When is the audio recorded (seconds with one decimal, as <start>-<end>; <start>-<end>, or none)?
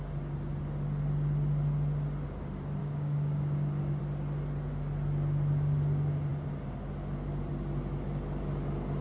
0.0-2.8; 4.0-9.0